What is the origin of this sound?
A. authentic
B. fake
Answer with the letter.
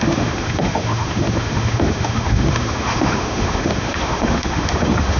B